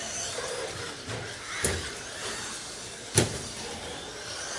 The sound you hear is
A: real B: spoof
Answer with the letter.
A